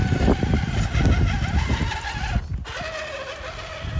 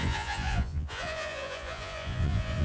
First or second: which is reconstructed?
second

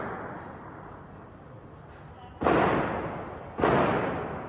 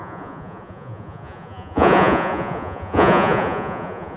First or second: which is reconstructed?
second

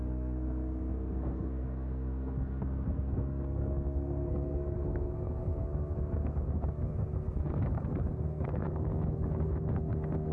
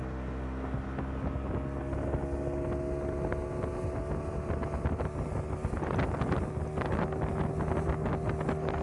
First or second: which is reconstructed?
first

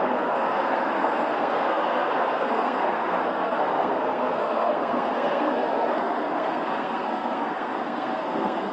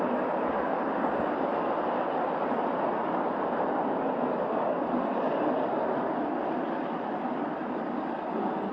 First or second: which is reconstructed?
first